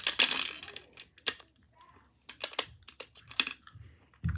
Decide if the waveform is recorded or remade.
recorded